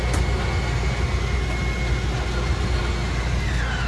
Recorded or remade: recorded